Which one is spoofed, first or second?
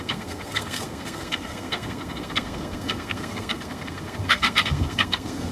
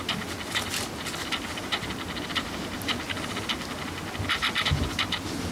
first